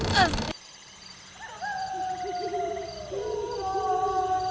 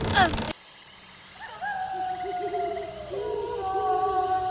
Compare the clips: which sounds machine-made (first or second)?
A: first